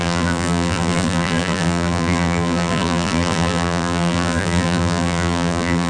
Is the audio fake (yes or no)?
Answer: yes